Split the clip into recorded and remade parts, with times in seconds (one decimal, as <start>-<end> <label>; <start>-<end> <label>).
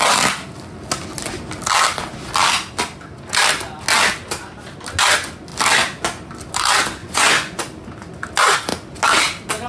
0.0-7.0 recorded; 7.0-7.6 remade; 7.6-9.7 recorded